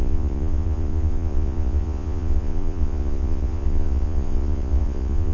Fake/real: fake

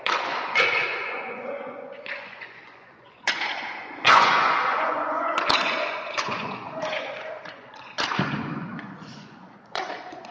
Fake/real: fake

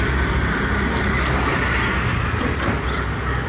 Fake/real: real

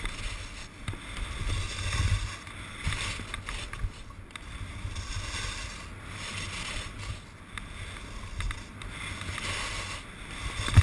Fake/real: real